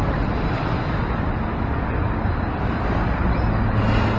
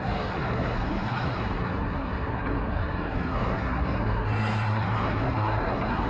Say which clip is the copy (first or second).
second